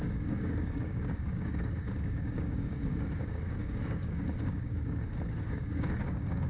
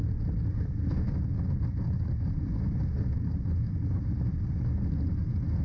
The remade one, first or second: first